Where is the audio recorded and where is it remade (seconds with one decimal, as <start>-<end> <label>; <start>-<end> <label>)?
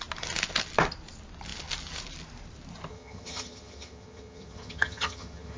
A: 0.0-2.9 recorded; 2.9-5.6 remade